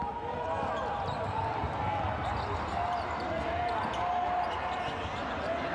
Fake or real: real